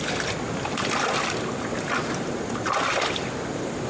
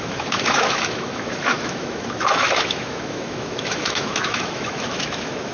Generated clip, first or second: second